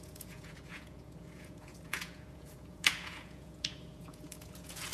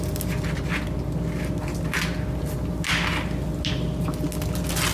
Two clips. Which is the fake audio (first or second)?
first